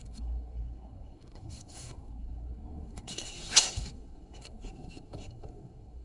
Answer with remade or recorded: remade